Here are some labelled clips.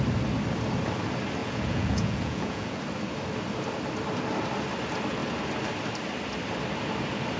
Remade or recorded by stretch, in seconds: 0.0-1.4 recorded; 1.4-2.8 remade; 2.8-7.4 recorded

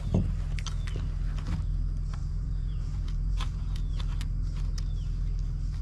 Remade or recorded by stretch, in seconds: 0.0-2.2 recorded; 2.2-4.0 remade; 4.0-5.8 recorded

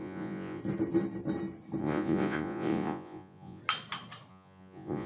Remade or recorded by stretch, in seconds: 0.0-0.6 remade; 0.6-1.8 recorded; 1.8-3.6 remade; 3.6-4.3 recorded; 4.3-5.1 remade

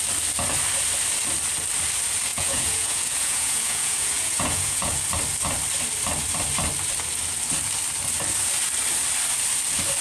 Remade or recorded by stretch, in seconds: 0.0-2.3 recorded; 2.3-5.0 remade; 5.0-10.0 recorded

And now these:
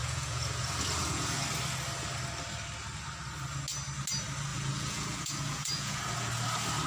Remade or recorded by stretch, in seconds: 0.0-1.4 remade; 1.4-4.5 recorded; 4.5-6.0 remade; 6.0-6.9 recorded

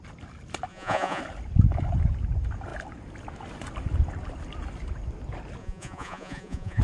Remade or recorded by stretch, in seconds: 0.0-0.7 recorded; 0.7-1.2 remade; 1.2-5.6 recorded; 5.6-6.8 remade

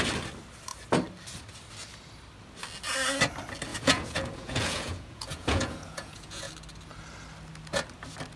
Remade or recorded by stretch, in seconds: 0.0-3.7 recorded; 3.7-6.5 remade; 6.5-8.4 recorded

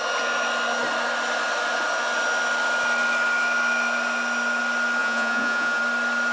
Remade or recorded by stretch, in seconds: 0.0-5.0 recorded; 5.0-5.8 remade; 5.8-6.3 recorded